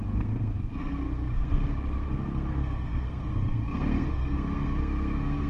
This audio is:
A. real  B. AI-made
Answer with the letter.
B